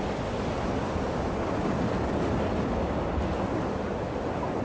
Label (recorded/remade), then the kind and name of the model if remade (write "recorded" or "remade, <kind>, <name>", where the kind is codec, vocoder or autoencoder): recorded